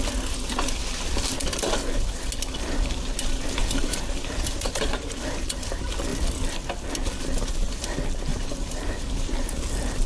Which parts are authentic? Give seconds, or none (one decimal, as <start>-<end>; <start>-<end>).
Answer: 0.0-3.6; 4.6-8.3